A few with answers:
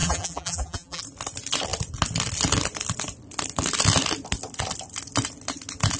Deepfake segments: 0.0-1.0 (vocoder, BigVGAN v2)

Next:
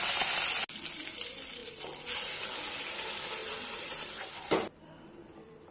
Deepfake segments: 3.4-4.3 (vocoder, BigVGAN v2)